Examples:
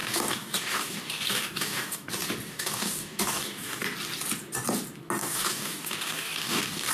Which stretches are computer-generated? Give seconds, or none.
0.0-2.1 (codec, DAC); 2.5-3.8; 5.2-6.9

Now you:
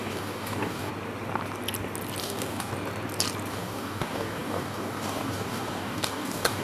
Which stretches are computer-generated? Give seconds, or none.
0.0-0.9 (codec, DAC); 2.2-2.7; 3.5-6.6